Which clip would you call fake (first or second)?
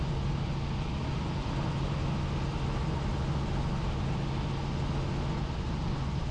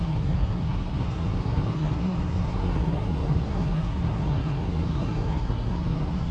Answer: second